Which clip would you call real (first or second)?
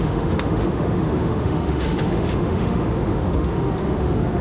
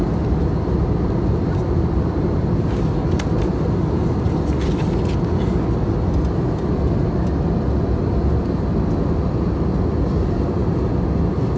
second